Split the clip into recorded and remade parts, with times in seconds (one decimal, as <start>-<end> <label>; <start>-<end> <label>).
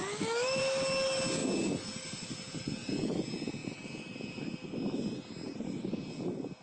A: 0.0-0.6 remade; 0.6-6.6 recorded